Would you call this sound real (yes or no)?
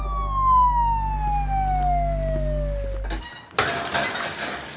yes